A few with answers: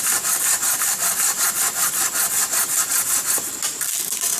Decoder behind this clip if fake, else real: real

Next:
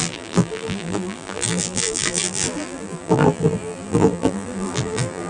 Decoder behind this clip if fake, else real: fake, vocoder, BigVGAN v2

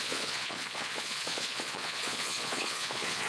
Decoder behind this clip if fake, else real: fake, vocoder, Vocos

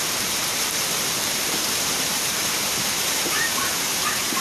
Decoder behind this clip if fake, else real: fake, vocoder, BigVGAN v2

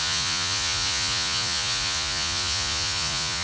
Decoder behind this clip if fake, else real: fake, vocoder, Vocos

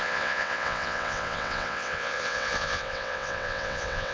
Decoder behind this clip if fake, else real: fake, vocoder, WaveNeXt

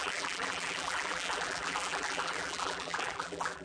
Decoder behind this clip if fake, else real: fake, vocoder, BigVGAN v2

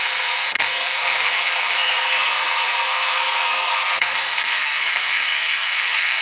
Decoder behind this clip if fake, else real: fake, codec, SNAC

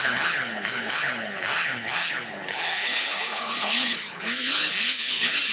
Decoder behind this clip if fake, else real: fake, codec, HILCodec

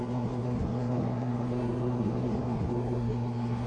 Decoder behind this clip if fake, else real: fake, codec, SNAC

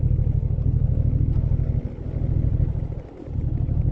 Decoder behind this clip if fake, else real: real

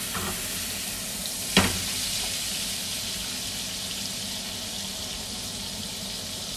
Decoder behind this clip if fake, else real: real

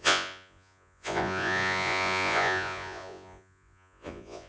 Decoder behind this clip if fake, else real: fake, vocoder, Vocos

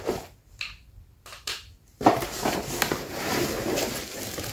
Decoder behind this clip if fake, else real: fake, vocoder, BigVGAN v2